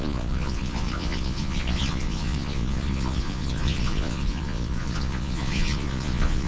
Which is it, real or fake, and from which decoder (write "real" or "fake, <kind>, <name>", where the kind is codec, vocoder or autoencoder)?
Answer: fake, vocoder, Vocos